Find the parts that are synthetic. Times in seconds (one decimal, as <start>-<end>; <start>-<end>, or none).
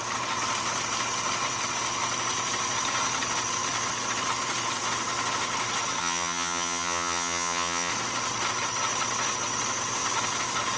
6.0-7.9